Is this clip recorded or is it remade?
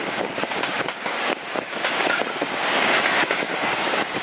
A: remade